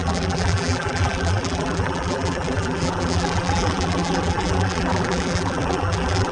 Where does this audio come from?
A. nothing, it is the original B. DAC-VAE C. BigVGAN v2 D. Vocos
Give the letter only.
C